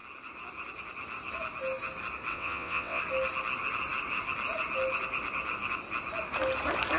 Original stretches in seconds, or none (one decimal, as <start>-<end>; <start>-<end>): 0.0-2.3; 3.0-7.0